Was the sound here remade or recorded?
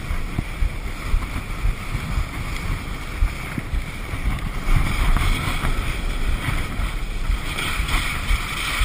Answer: remade